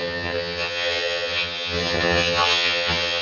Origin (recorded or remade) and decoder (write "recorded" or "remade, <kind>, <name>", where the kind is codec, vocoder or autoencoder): remade, vocoder, HiFi-GAN